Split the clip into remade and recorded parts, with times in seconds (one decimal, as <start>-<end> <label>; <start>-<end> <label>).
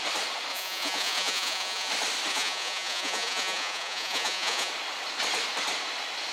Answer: 0.0-0.5 recorded; 0.5-1.9 remade; 1.9-2.3 recorded; 2.3-4.7 remade; 4.7-6.3 recorded